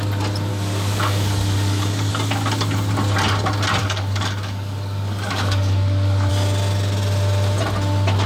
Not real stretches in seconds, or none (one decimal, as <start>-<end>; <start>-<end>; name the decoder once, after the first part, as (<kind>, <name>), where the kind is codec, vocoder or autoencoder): 0.5-2.1 (codec, DAC); 3.8-6.3